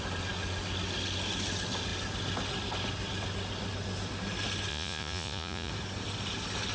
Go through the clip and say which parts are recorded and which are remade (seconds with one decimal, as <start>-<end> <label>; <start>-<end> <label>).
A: 0.0-4.7 recorded; 4.7-5.7 remade; 5.7-6.7 recorded